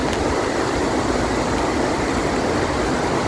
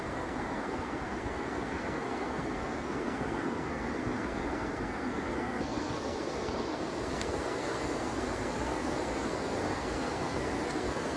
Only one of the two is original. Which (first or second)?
first